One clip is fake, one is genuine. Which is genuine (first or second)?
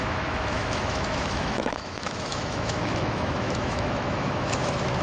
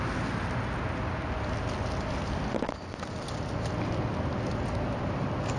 second